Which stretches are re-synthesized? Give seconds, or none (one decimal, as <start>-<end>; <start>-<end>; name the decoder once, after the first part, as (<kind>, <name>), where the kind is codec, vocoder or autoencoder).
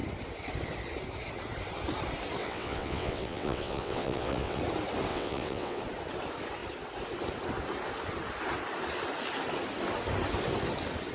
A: 2.4-4.6 (vocoder, WaveNeXt); 5.1-5.8